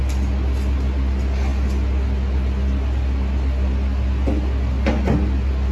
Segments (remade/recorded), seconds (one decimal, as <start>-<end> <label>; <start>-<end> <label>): 0.0-5.7 recorded